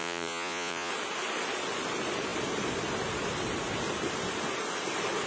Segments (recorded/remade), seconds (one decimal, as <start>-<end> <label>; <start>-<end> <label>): 0.0-0.9 remade; 0.9-5.3 recorded